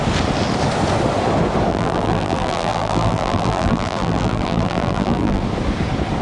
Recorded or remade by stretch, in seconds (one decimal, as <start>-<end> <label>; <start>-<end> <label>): 0.0-1.7 recorded; 1.7-5.4 remade; 5.4-6.2 recorded